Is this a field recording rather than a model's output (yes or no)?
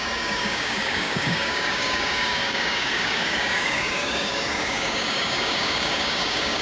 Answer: no